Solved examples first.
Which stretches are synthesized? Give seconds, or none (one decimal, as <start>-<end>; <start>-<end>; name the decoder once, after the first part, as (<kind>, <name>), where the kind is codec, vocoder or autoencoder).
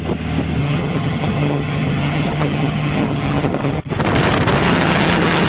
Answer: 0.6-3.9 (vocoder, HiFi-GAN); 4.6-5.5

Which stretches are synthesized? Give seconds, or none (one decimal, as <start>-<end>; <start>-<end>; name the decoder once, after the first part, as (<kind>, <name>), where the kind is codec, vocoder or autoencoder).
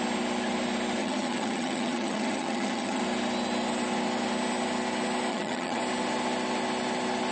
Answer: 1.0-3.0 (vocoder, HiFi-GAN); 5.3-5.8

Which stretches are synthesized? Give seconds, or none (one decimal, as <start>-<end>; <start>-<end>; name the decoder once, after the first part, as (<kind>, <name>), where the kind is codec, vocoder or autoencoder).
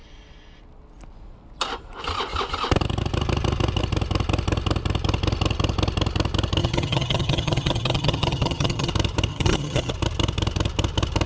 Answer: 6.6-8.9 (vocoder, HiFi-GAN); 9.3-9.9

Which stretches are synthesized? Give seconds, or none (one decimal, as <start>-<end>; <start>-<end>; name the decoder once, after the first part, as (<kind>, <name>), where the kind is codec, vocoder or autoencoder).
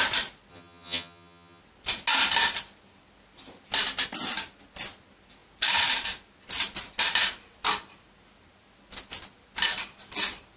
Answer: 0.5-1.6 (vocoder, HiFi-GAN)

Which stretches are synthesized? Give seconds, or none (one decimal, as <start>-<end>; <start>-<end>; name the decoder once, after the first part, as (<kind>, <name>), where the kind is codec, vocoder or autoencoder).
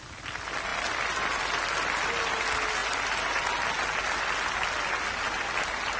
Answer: none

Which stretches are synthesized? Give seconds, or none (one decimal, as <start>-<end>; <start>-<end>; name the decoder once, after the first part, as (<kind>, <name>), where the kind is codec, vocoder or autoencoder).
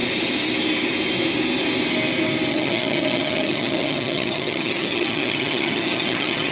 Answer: 2.5-6.5 (vocoder, HiFi-GAN)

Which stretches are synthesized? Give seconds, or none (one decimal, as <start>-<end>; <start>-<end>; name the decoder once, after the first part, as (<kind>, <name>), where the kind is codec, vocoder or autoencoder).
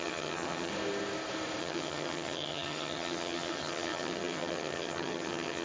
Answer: 0.0-0.7 (vocoder, HiFi-GAN); 1.6-5.6